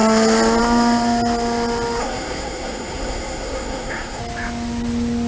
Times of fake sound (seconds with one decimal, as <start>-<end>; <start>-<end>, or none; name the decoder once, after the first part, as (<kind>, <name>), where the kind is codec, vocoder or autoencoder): 2.0-4.2 (codec, SNAC)